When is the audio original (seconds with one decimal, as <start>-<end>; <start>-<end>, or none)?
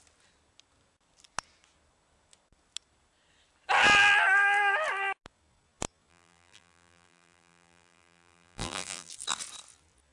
0.0-6.1; 9.1-10.1